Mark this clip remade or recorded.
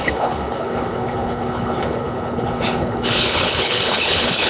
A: remade